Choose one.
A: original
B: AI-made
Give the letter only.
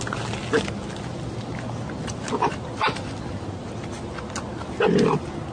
A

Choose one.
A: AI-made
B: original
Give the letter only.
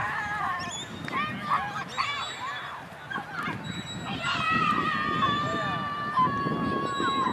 B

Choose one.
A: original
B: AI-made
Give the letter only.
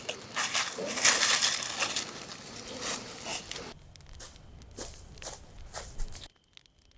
A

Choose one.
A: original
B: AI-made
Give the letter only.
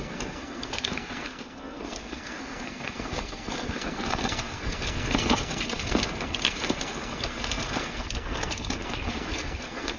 B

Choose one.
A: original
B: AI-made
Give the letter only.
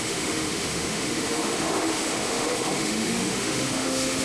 B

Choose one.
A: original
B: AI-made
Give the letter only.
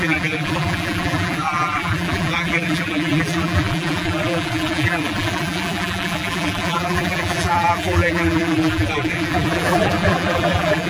B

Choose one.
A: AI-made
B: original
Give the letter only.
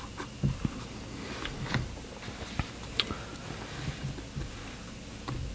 B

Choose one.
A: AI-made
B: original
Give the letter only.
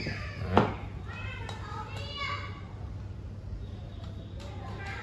B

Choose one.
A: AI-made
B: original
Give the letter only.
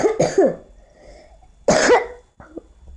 B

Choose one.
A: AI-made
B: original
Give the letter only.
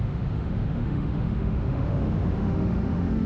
A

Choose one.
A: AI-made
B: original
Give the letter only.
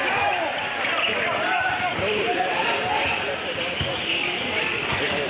B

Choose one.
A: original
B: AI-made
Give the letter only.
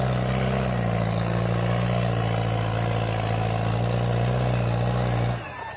A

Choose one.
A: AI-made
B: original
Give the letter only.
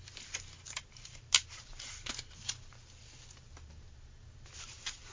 B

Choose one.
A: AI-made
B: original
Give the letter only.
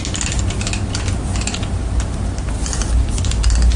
B